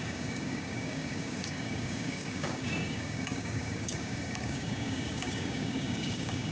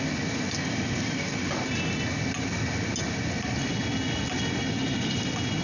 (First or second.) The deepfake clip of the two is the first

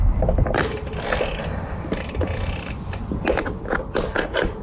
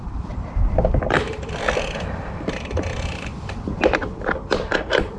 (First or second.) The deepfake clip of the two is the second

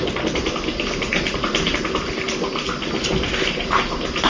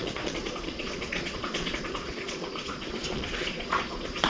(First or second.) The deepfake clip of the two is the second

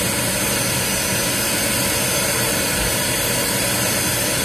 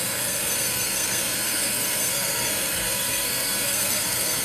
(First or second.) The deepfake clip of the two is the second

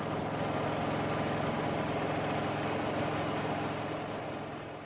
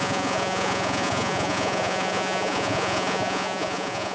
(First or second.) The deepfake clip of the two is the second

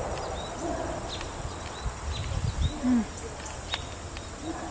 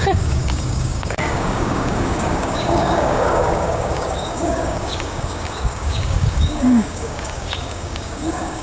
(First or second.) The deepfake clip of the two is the second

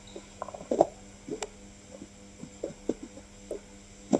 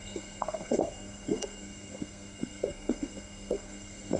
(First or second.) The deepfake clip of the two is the second